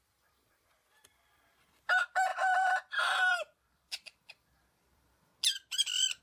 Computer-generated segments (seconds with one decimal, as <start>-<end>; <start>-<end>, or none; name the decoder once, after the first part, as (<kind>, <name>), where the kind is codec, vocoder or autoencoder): 0.0-5.3 (vocoder, BigVGAN v2)